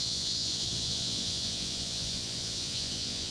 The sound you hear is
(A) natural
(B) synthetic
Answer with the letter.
B